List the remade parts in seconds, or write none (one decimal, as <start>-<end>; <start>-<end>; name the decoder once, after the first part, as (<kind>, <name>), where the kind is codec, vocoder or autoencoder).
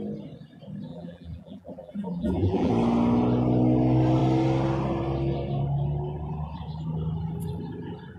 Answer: 0.9-2.7 (vocoder, BigVGAN v2)